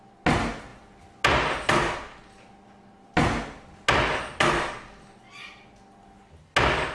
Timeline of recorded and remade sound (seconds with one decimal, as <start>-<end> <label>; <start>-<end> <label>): 0.0-6.9 recorded